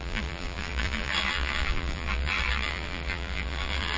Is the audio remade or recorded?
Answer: remade